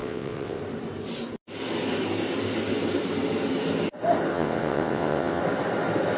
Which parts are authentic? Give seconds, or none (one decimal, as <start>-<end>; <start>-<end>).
0.6-4.3; 5.4-6.2